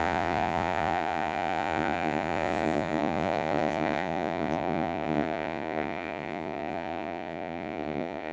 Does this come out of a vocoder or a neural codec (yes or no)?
yes